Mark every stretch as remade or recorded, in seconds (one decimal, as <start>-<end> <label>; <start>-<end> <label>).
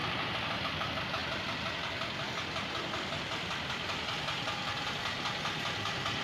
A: 0.0-6.2 recorded